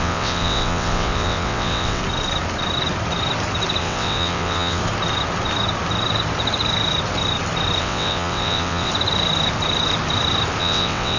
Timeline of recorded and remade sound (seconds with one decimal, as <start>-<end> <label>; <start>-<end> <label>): 0.0-2.0 remade; 2.0-3.8 recorded; 3.8-4.8 remade; 4.8-7.8 recorded; 7.8-8.9 remade; 8.9-10.6 recorded; 10.6-11.2 remade